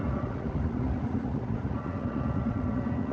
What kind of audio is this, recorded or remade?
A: remade